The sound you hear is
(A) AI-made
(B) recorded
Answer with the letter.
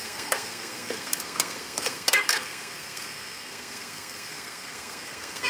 A